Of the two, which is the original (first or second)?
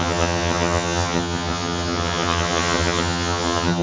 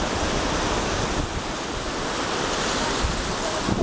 second